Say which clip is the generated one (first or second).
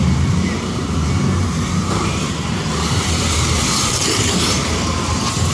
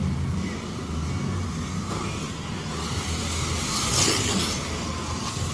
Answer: first